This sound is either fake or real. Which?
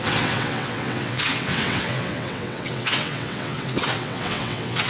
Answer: fake